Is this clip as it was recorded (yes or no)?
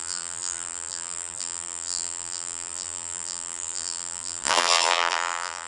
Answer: no